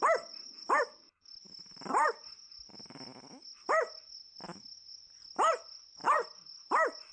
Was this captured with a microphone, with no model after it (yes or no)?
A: yes